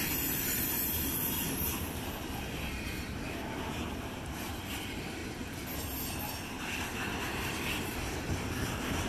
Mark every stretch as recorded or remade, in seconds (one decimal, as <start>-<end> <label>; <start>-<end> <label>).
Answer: 0.0-5.2 remade; 5.2-7.2 recorded; 7.2-9.1 remade